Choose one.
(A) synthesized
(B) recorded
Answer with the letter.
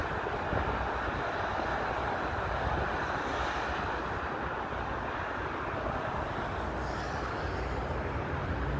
B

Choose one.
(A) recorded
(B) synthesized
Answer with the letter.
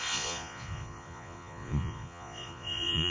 B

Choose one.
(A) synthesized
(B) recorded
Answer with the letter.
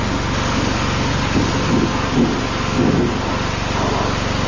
B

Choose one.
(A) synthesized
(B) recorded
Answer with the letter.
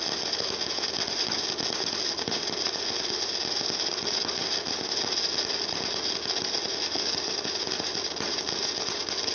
B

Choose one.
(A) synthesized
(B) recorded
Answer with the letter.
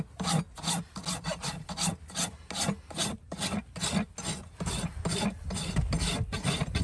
B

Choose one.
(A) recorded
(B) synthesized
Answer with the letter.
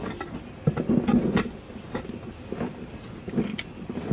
A